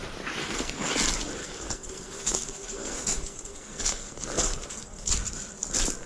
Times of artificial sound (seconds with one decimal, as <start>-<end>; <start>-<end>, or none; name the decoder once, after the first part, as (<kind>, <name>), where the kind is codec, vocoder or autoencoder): 0.4-0.9 (codec, SNAC); 1.4-5.1